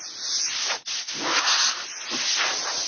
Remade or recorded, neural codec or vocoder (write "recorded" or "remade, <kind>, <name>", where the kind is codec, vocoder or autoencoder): recorded